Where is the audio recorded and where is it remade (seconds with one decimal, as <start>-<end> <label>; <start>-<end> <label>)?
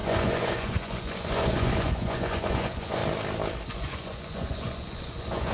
0.0-3.0 remade; 3.0-3.7 recorded; 3.7-5.5 remade